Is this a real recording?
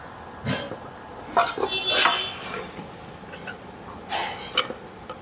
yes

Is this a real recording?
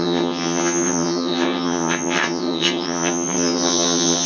no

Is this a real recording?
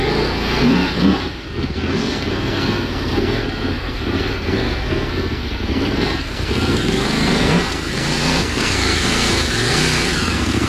no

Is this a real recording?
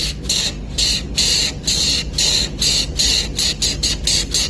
yes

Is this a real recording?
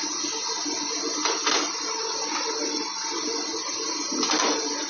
yes